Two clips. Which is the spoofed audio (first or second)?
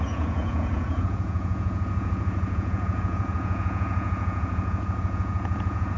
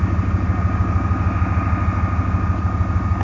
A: first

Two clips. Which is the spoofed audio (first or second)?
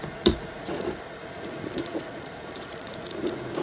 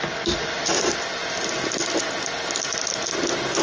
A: first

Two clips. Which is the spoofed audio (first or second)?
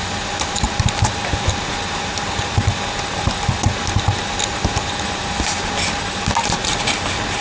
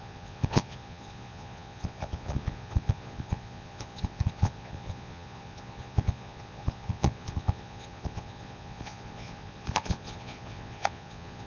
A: second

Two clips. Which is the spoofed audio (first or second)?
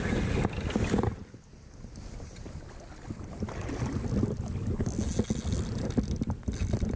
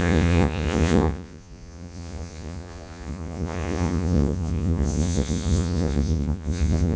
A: second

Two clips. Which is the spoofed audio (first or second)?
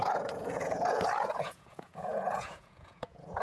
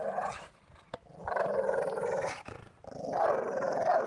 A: first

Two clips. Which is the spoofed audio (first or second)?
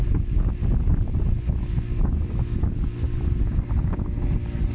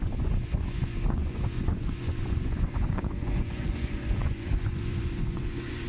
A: second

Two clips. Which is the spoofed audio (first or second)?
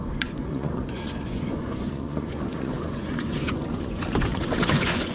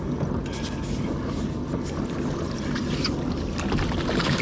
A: first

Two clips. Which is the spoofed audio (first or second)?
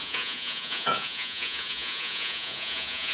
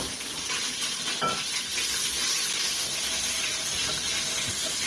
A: first